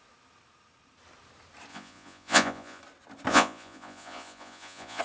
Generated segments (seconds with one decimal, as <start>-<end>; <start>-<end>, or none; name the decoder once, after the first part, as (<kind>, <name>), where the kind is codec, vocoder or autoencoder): 1.7-2.8 (vocoder, Vocos); 3.3-5.0